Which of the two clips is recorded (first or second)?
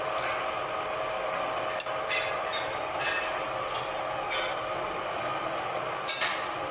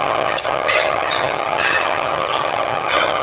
first